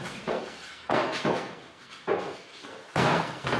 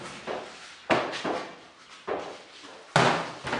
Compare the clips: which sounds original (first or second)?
second